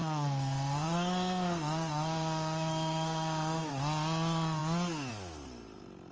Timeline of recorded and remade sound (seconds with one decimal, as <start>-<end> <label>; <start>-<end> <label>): 0.0-3.7 remade; 3.7-6.1 recorded

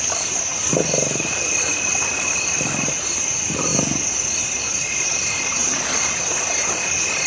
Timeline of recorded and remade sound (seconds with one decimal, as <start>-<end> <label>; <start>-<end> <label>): 0.0-7.3 recorded

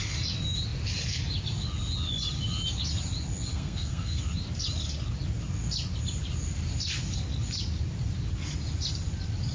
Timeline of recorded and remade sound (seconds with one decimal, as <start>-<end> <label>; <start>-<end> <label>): 0.0-3.5 recorded; 3.5-4.2 remade; 4.2-9.5 recorded

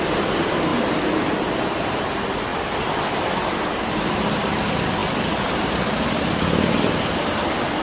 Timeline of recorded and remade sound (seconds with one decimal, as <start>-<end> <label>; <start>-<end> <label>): 0.0-7.8 recorded

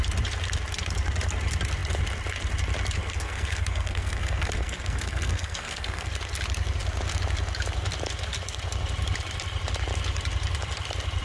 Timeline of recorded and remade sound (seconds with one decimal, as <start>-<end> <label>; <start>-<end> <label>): 0.0-3.0 recorded; 3.0-6.1 remade; 6.1-11.2 recorded